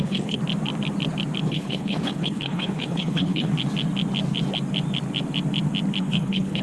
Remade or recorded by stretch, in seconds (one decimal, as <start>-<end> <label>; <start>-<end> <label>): 0.0-0.4 remade; 0.4-1.4 recorded; 1.4-3.5 remade; 3.5-6.0 recorded; 6.0-6.6 remade